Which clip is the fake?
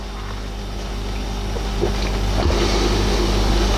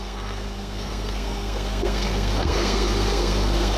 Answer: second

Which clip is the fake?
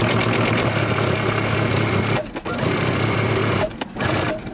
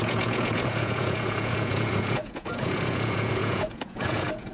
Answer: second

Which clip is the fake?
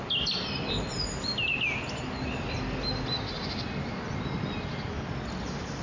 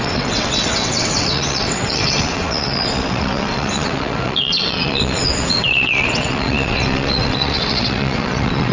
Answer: second